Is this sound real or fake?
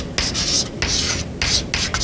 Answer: real